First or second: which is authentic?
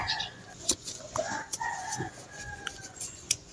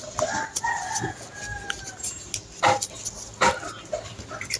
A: second